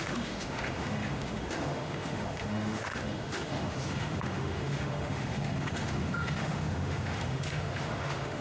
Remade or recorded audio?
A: remade